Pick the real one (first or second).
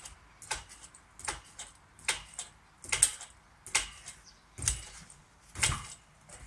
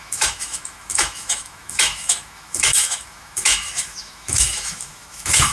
first